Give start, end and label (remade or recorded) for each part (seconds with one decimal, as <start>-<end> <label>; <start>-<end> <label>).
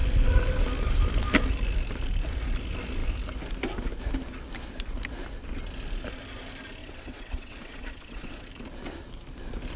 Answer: 0.0-6.8 recorded; 6.8-8.5 remade; 8.5-9.8 recorded